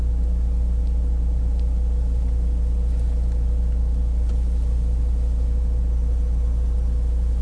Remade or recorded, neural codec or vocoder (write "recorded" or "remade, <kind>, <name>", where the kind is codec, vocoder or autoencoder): recorded